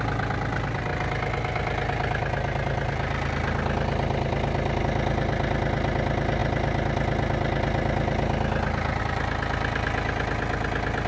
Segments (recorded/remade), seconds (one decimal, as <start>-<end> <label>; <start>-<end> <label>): 0.0-11.1 recorded